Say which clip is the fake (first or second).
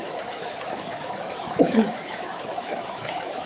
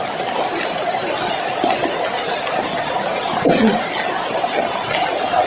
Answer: first